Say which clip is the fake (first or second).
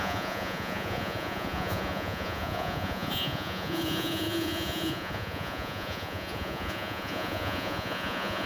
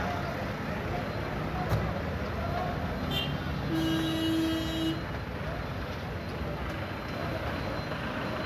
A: first